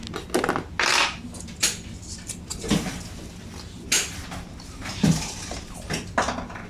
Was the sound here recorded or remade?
recorded